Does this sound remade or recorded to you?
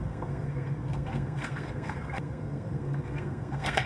remade